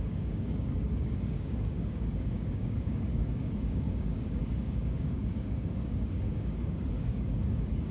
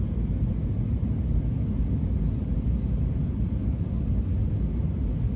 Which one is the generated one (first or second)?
first